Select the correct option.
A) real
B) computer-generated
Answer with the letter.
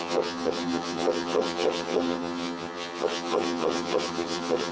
B